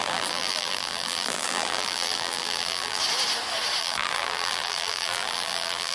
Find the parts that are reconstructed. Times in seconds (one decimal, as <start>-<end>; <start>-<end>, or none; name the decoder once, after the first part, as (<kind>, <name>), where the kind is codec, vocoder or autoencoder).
0.0-3.0 (vocoder, BigVGAN v2); 3.8-5.9

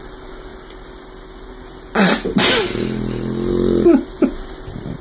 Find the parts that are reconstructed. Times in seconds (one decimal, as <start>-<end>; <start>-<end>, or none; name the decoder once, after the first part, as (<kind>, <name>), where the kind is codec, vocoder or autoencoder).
none

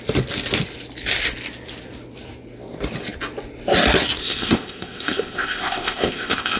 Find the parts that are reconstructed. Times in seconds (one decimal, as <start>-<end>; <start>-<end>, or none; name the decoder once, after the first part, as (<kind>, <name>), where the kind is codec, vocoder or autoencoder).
4.2-6.6 (codec, ZipCodec)